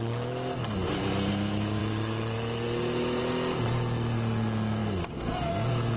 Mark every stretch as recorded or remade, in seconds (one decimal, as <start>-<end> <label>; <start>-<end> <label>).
0.0-1.8 recorded; 1.8-3.2 remade; 3.2-4.8 recorded; 4.8-5.5 remade; 5.5-6.0 recorded